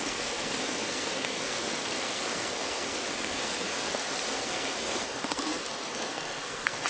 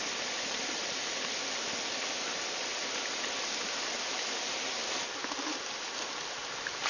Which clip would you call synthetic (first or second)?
first